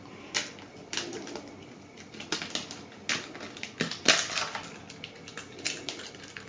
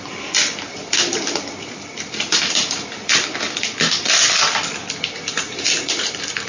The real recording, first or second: first